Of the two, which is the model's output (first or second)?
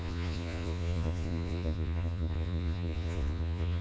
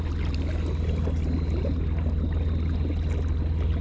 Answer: first